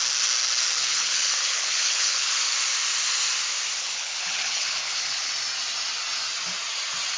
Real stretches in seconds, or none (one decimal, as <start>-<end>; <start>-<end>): 0.0-0.8; 2.3-3.8; 5.3-7.2

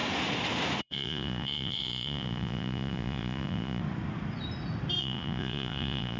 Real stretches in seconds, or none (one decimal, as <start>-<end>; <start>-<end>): 0.0-0.8; 3.8-5.0

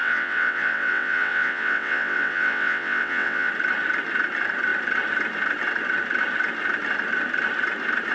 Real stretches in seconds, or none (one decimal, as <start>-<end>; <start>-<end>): 3.5-8.1

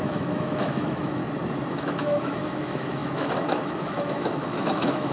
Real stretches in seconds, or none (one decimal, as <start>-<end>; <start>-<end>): 1.2-1.7

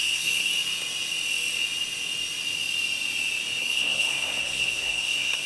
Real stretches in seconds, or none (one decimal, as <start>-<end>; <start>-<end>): 0.5-3.6

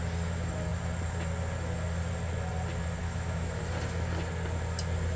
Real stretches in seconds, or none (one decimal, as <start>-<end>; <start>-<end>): 0.0-3.0; 3.6-5.2

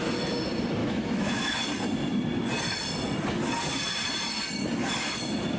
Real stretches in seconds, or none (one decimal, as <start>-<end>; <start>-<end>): 0.0-0.8; 1.6-5.6

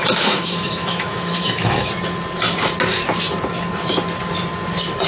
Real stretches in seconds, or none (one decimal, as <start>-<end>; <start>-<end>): 1.9-5.1